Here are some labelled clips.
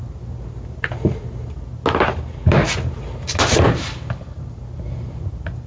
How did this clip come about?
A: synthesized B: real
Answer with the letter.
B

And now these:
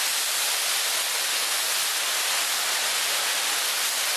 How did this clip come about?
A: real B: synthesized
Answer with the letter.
A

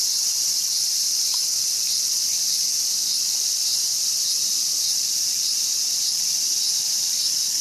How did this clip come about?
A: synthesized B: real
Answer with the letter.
A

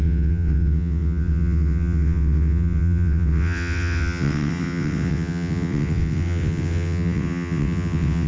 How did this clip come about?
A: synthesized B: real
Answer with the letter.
A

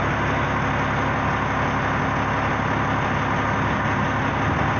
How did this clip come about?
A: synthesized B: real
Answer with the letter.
B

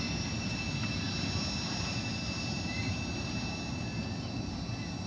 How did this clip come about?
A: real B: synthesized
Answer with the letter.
A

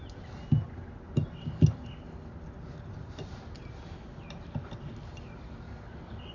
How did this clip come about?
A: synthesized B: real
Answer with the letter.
B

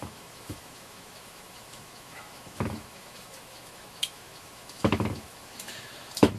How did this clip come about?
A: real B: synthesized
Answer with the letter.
B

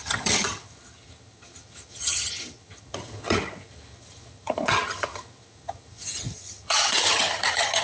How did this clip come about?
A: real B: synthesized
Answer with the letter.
B